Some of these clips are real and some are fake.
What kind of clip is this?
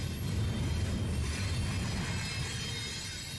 real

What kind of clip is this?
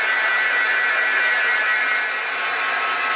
real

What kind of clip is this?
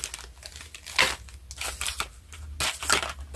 real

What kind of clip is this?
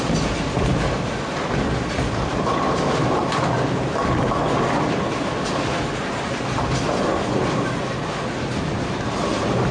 real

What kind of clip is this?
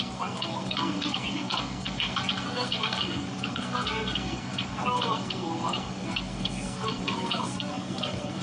fake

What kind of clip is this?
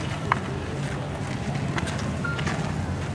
real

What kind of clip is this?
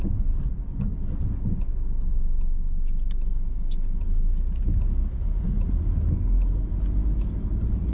real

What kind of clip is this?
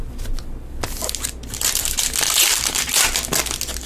real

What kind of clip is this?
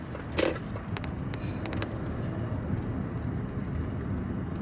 real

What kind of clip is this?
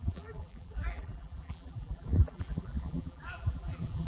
fake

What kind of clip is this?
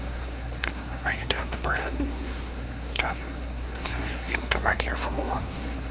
fake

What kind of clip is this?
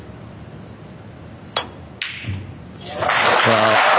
real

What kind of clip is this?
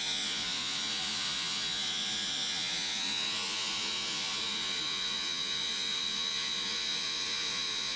fake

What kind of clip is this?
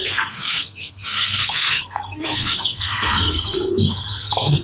fake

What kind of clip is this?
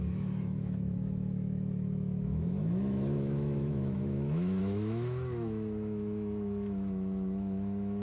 fake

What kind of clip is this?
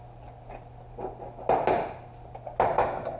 real